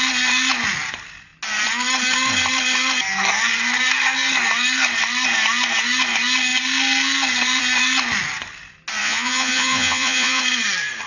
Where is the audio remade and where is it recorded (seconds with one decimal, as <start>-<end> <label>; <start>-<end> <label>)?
0.0-9.0 recorded; 9.0-10.4 remade; 10.4-11.1 recorded